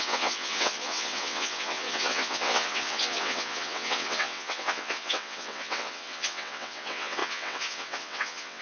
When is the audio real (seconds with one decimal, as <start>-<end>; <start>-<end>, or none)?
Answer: none